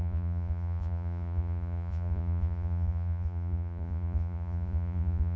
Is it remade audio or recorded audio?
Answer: remade